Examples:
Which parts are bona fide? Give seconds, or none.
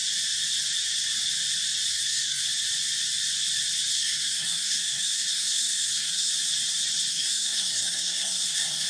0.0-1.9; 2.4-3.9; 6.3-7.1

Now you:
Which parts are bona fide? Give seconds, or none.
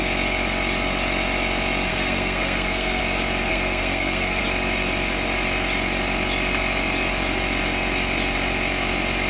0.0-1.9; 3.0-3.5; 4.4-9.3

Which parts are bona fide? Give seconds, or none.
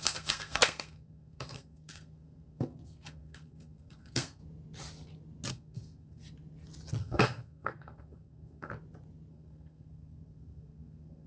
4.4-5.5; 6.2-7.0; 8.7-9.3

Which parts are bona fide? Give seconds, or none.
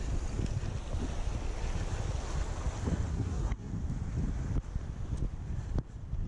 0.0-3.1; 3.7-6.3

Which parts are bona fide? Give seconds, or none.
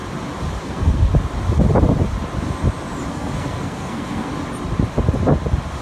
0.0-0.6; 1.1-3.1; 4.3-5.8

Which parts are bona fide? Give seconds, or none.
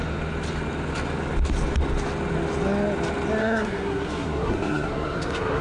0.0-3.4